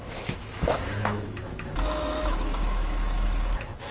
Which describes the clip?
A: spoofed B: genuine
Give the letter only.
A